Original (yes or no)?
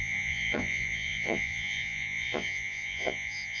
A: no